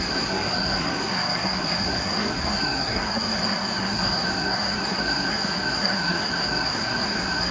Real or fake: fake